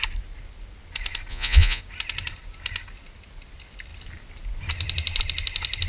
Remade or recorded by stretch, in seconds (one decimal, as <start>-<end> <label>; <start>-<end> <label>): 0.0-1.3 recorded; 1.3-1.8 remade; 1.8-5.9 recorded